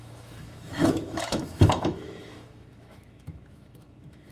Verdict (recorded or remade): remade